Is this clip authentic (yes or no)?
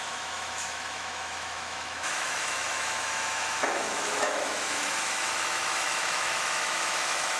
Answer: no